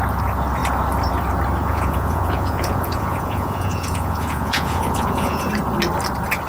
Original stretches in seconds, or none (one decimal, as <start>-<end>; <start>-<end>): 0.0-1.6; 5.5-6.5